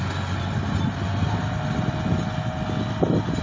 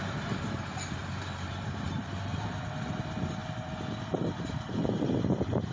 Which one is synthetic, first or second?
second